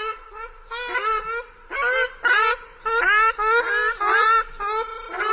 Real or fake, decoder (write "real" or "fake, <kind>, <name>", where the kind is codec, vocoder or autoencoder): real